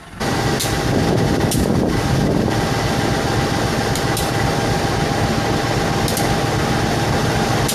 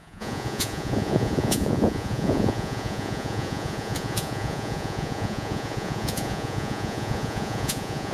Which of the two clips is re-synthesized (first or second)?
second